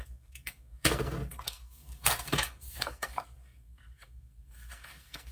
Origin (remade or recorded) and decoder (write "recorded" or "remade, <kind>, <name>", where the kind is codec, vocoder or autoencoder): remade, codec, SNAC